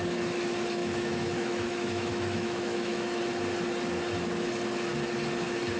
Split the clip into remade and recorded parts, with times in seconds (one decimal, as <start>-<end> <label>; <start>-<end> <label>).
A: 0.0-0.8 recorded; 0.8-3.2 remade; 3.2-5.8 recorded